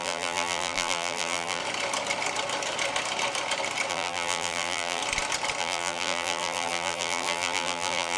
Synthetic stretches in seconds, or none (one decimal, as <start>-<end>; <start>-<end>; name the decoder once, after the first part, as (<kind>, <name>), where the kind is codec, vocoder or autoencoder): 0.0-1.6 (vocoder, BigVGAN v2); 3.9-5.0; 5.6-8.2